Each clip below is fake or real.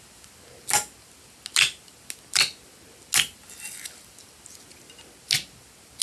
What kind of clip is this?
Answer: real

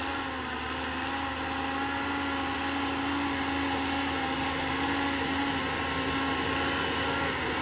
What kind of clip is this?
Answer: real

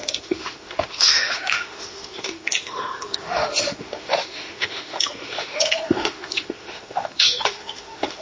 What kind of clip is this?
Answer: fake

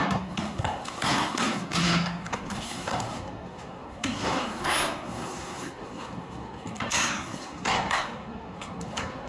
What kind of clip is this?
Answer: fake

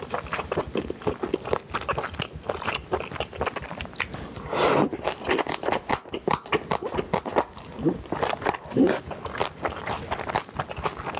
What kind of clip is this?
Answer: real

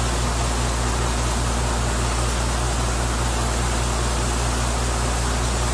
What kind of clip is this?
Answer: real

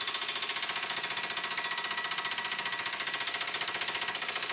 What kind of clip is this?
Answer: real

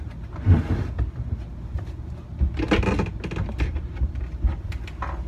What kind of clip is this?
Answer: real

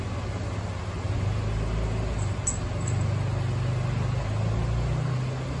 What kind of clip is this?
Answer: real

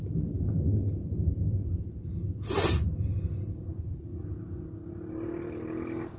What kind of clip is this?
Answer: real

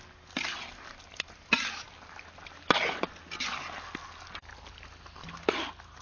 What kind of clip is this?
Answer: real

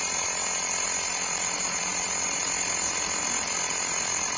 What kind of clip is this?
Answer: fake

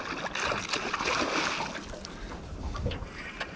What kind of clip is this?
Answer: real